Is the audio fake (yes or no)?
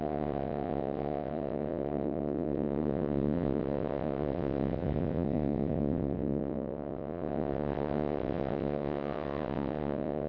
yes